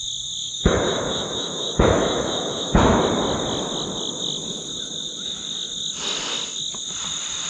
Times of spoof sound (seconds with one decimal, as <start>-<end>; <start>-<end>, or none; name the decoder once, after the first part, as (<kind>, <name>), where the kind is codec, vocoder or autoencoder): 0.4-3.0 (autoencoder, DAC-VAE)